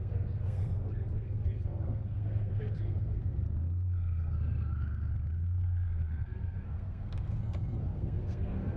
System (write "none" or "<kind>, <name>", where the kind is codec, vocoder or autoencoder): codec, SNAC